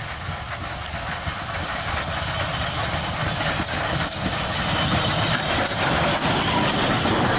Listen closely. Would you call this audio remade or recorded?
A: recorded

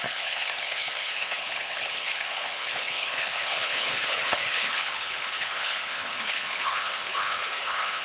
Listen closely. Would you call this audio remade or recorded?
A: remade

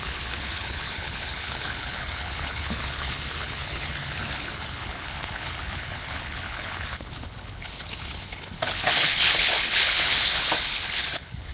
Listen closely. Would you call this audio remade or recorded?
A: remade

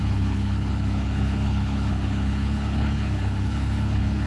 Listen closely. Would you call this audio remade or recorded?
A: remade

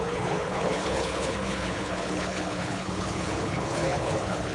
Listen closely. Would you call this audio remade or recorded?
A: remade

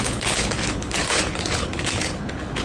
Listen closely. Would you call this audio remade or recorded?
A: remade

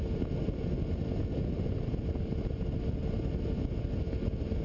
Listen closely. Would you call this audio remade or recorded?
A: recorded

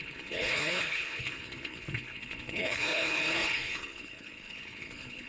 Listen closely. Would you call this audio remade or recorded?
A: remade